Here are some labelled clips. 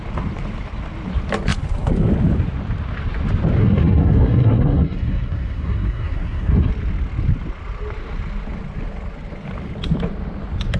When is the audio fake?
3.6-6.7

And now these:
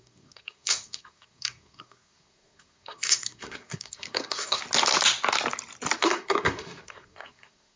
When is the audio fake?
0.0-4.6; 6.0-7.8

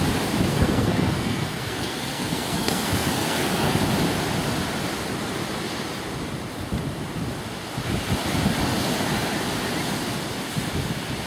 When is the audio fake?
0.5-3.8

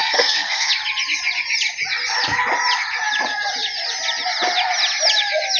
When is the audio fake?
0.0-0.7